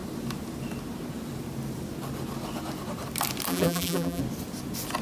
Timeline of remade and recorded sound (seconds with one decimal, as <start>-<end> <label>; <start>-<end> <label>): 0.0-3.5 recorded; 3.5-4.2 remade; 4.2-5.0 recorded